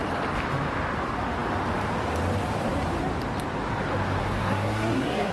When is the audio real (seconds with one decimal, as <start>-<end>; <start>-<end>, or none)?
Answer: 0.0-4.2